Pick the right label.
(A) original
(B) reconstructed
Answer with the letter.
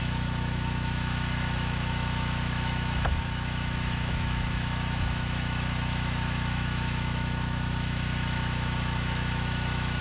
B